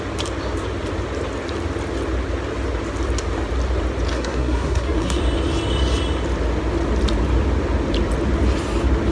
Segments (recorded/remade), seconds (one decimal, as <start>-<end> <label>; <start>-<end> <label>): 0.0-4.1 recorded; 4.1-5.2 remade; 5.2-9.1 recorded